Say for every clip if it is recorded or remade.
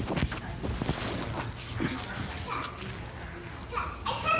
recorded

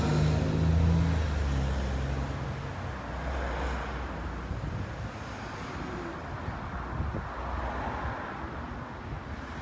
recorded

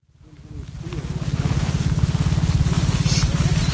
recorded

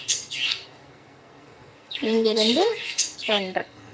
remade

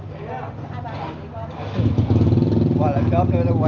recorded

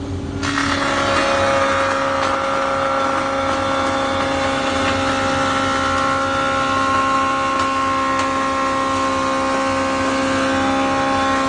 recorded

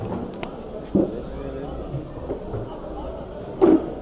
recorded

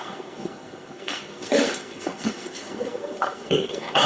remade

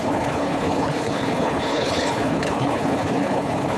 remade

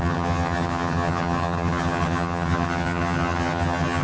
remade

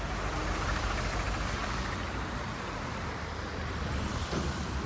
recorded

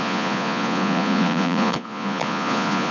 remade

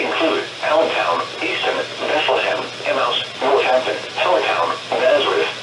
recorded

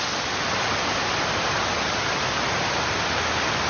recorded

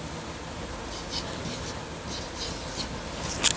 recorded